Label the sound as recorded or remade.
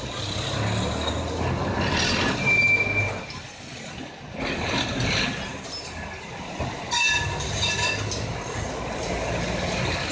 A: recorded